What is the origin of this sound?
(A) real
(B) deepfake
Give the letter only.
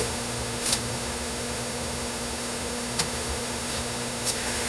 B